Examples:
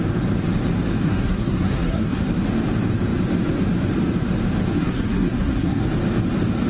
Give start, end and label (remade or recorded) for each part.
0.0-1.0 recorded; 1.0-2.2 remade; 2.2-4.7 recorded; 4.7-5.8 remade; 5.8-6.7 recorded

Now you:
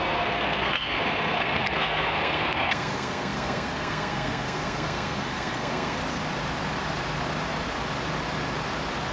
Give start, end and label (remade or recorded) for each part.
0.0-6.0 remade; 6.0-9.1 recorded

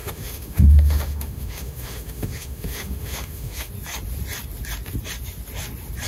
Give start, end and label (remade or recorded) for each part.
0.0-3.7 remade; 3.7-6.1 recorded

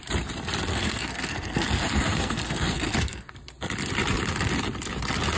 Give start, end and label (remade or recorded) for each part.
0.0-0.7 recorded; 0.7-3.3 remade; 3.3-5.4 recorded

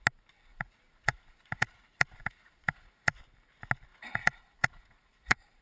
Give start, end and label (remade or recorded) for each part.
0.0-0.5 recorded; 0.5-3.2 remade; 3.2-3.9 recorded; 3.9-5.6 remade